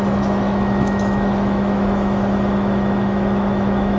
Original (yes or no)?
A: no